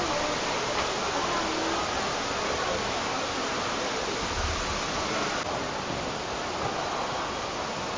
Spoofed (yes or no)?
no